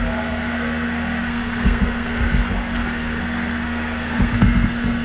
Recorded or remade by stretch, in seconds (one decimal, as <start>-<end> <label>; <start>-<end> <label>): 0.0-5.0 remade